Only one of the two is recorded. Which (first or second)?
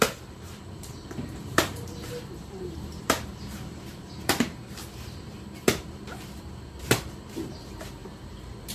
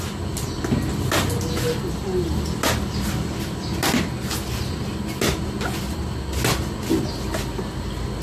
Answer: second